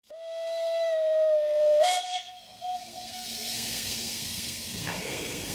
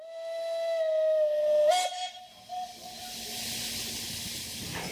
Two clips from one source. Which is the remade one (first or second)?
first